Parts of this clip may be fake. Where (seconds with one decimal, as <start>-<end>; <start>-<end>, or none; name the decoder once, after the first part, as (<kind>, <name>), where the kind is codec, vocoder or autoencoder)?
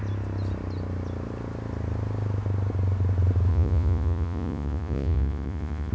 3.5-5.9 (vocoder, Vocos)